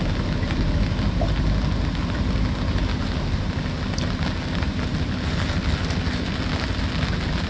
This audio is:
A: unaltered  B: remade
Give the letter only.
A